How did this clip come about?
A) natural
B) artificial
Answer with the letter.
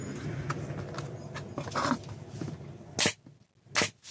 A